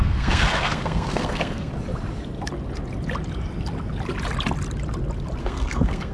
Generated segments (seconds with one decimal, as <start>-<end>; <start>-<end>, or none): 0.0-1.7; 5.4-6.1